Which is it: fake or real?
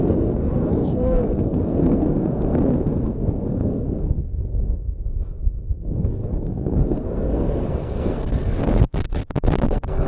fake